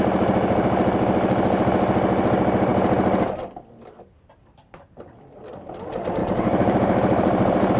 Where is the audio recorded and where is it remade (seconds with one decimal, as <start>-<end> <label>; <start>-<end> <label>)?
0.0-6.2 recorded; 6.2-7.8 remade